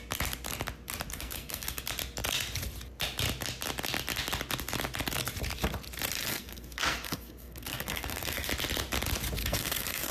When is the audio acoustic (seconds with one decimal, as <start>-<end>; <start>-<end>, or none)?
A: 0.0-1.1; 1.8-6.2; 8.5-9.4

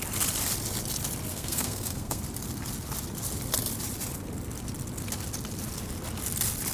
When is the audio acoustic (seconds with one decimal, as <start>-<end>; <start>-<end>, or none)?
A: 0.0-1.3; 2.2-6.7

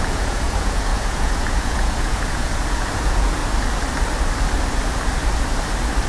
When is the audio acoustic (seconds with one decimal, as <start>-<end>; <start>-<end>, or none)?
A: 3.4-6.1

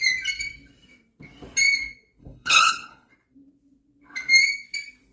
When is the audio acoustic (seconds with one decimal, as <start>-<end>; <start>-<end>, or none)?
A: 0.0-2.2; 3.1-5.1

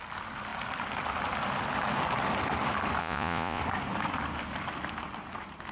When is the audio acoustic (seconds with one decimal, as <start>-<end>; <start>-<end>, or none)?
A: 0.0-3.0; 3.6-5.7

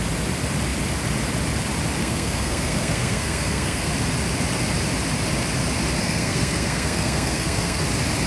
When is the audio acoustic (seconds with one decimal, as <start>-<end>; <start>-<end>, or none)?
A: 0.0-2.0; 3.9-6.0; 7.8-8.3